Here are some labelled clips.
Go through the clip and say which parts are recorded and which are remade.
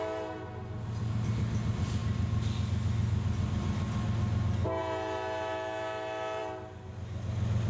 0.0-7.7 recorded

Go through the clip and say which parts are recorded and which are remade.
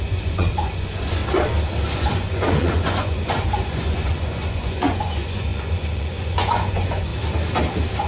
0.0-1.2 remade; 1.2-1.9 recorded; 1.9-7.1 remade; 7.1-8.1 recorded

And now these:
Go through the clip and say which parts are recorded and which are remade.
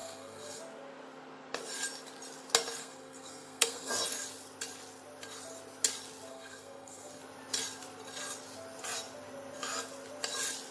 0.0-0.6 remade; 0.6-2.8 recorded; 2.8-3.9 remade; 3.9-6.3 recorded; 6.3-7.2 remade; 7.2-10.7 recorded